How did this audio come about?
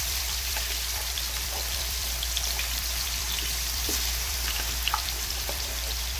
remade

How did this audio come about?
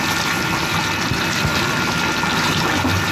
remade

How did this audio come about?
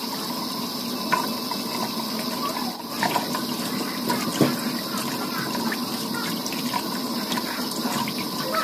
recorded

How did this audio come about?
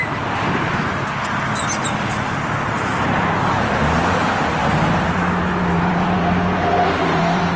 remade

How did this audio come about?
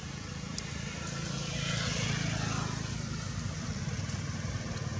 recorded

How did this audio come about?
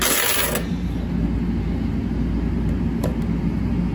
recorded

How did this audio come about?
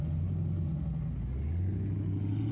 recorded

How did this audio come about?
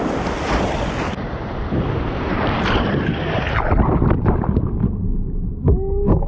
recorded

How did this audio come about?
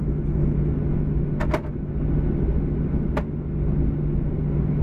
recorded